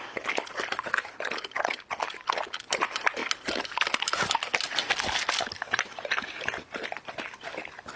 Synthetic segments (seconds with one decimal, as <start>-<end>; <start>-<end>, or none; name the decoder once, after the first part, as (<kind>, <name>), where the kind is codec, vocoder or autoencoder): none